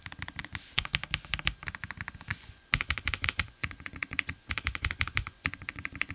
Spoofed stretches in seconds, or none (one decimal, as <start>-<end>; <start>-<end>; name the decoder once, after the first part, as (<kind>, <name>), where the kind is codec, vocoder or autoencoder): 0.4-0.9 (vocoder, Vocos); 2.3-6.1